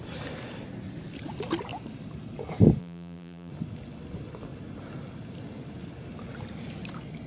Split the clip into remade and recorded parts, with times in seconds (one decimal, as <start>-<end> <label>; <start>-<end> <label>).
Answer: 0.0-2.8 recorded; 2.8-3.5 remade; 3.5-7.3 recorded